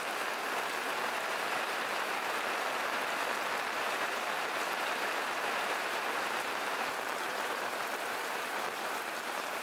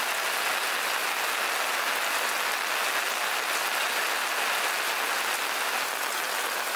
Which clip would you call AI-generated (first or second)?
first